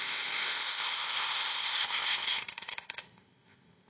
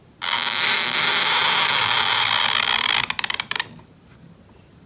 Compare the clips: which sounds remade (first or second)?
first